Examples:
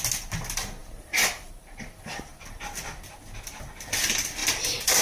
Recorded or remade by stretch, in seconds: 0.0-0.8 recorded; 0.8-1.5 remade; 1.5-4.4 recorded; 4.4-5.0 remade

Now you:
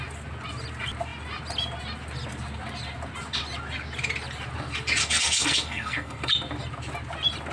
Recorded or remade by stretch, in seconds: 0.0-5.0 recorded; 5.0-6.3 remade; 6.3-7.5 recorded

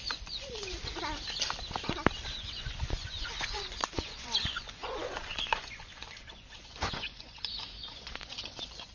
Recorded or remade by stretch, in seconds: 0.0-0.8 remade; 0.8-2.3 recorded; 2.3-8.9 remade

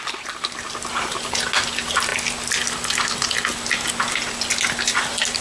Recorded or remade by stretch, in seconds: 0.0-5.4 recorded